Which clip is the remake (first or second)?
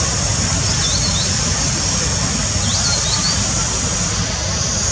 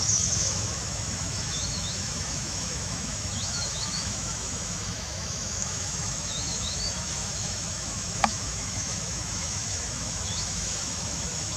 second